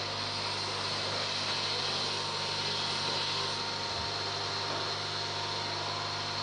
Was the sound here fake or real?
real